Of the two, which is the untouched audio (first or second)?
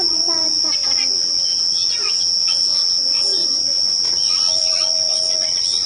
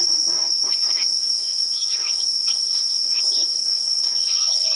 first